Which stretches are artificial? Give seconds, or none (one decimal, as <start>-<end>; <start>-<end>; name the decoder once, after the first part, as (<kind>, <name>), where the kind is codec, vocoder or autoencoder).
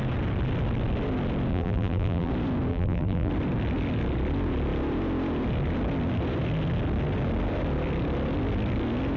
1.5-2.3 (vocoder, BigVGAN v2); 2.7-3.3